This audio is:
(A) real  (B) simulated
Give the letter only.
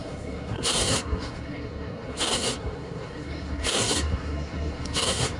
B